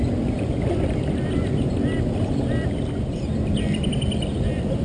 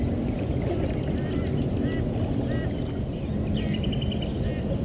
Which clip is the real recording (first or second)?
second